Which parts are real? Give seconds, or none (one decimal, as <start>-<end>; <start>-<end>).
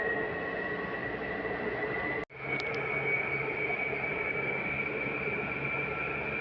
0.0-4.1; 4.8-6.4